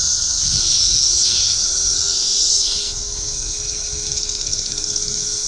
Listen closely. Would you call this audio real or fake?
fake